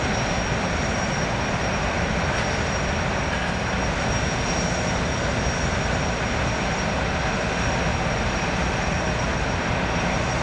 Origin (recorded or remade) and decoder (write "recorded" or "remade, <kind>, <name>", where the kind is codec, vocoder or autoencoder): recorded